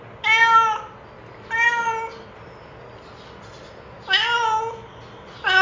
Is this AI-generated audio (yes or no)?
no